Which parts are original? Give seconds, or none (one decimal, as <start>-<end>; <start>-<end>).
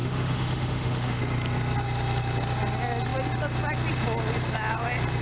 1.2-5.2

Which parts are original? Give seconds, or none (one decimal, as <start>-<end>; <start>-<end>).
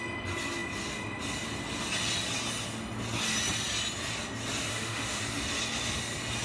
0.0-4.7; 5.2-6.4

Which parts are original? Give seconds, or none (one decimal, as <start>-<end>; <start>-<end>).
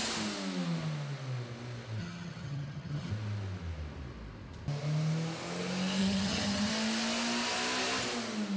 0.0-2.0; 3.1-6.0; 6.7-8.6